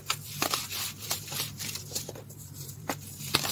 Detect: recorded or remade remade